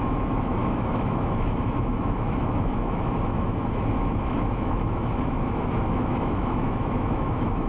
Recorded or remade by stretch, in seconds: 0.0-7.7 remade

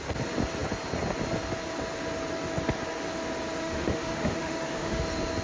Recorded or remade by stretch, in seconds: 0.0-3.6 recorded; 3.6-5.0 remade; 5.0-5.4 recorded

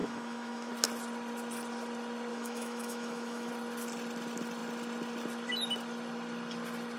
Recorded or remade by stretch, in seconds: 0.0-0.7 remade; 0.7-2.3 recorded; 2.3-3.5 remade; 3.5-7.0 recorded

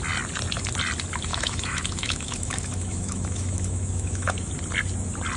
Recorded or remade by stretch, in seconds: 0.0-1.3 recorded; 1.3-4.5 remade; 4.5-5.4 recorded

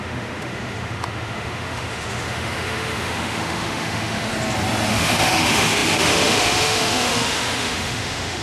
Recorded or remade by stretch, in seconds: 0.0-4.3 remade; 4.3-4.9 recorded; 4.9-8.4 remade